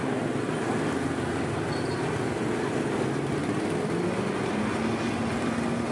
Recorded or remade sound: recorded